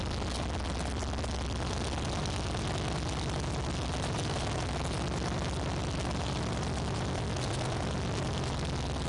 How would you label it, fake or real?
real